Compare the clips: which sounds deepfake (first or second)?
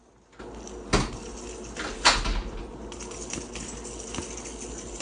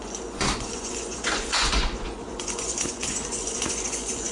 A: second